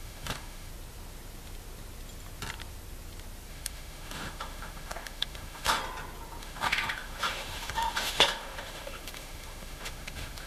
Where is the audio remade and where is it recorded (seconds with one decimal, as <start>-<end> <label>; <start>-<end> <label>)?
0.0-0.7 remade; 0.7-3.5 recorded; 3.5-5.8 remade; 5.8-6.4 recorded; 6.4-10.5 remade